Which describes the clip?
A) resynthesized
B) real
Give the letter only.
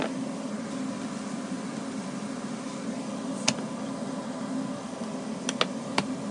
B